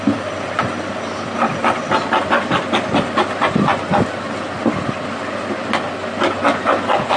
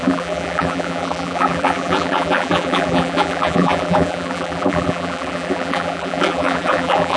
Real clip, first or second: first